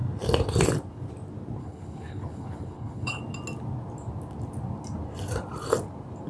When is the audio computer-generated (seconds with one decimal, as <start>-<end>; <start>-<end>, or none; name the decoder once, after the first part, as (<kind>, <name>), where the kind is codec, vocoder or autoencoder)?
1.6-3.2 (codec, HILCodec)